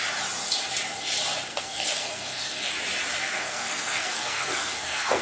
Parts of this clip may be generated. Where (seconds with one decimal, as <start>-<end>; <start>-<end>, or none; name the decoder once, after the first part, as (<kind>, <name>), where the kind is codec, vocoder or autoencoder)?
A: 1.5-2.7 (codec, SNAC); 3.2-5.2